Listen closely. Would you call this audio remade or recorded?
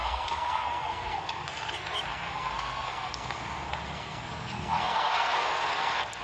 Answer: remade